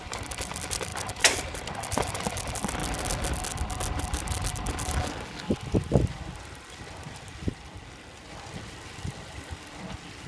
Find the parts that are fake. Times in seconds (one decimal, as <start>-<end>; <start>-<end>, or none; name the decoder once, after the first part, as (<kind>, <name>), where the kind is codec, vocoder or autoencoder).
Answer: 0.0-2.8 (vocoder, BigVGAN v2); 3.9-7.5; 8.3-10.3